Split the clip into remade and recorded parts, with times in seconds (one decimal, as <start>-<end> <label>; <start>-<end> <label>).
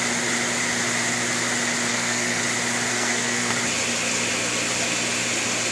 0.0-1.9 recorded; 1.9-2.4 remade; 2.4-2.9 recorded; 2.9-3.5 remade; 3.5-5.7 recorded